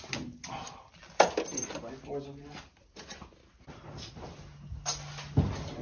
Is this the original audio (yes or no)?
yes